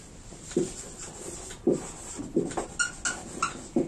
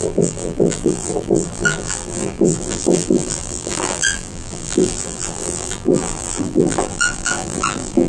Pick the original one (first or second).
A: first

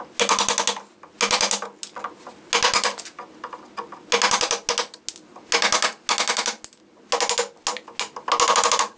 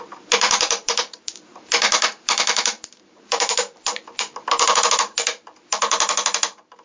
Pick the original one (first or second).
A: first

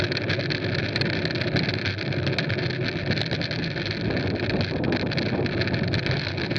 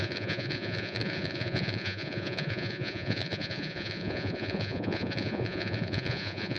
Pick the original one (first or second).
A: first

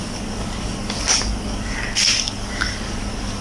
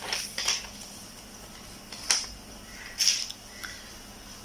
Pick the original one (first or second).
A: second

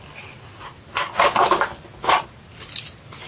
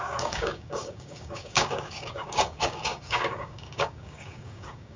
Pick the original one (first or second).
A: first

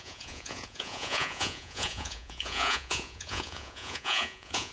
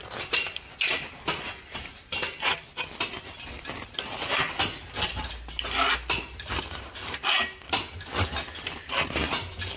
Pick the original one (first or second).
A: second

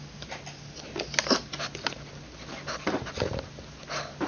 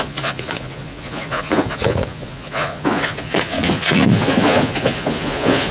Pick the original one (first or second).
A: first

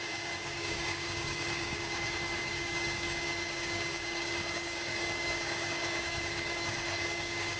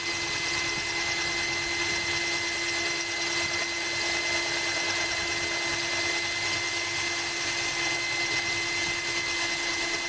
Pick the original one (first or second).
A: second